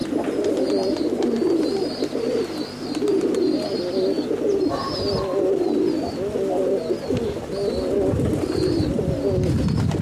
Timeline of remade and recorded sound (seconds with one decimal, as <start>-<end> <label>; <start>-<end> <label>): 0.0-10.0 recorded

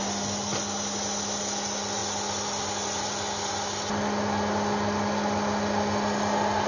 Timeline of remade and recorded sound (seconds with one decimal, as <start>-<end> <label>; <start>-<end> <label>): 0.0-6.7 recorded

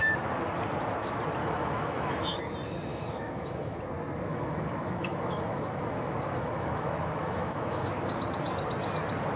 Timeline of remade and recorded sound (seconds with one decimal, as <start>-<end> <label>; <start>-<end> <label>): 0.0-1.4 recorded; 1.4-2.4 remade; 2.4-2.9 recorded; 2.9-3.8 remade; 3.8-4.3 recorded; 4.3-7.9 remade; 7.9-9.4 recorded

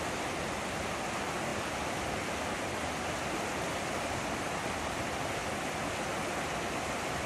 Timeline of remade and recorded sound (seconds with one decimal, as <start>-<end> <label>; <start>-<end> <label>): 0.0-7.3 recorded

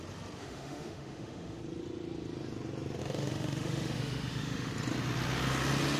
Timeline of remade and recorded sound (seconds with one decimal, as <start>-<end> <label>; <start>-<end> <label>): 0.0-0.4 recorded; 0.4-1.6 remade; 1.6-3.0 recorded; 3.0-4.7 remade; 4.7-6.0 recorded